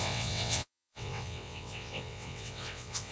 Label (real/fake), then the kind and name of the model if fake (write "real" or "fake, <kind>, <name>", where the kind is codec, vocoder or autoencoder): fake, vocoder, WaveNeXt